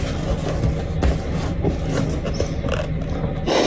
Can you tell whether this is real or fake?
real